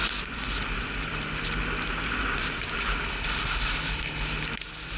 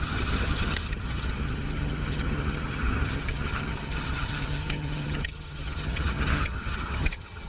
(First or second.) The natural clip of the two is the first